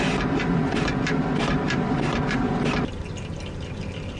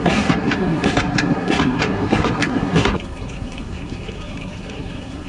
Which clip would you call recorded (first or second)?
first